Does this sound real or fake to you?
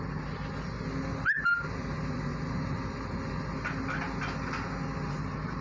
real